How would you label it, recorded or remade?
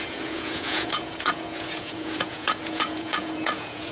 remade